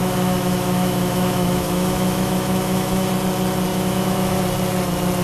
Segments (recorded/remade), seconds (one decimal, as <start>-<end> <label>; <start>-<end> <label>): 0.0-3.1 remade; 3.1-3.7 recorded; 3.7-4.4 remade; 4.4-5.2 recorded